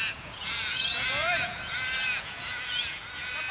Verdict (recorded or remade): remade